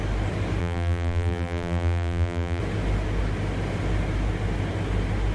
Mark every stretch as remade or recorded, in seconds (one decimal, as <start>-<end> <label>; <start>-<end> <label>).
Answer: 0.0-0.6 recorded; 0.6-2.6 remade; 2.6-5.3 recorded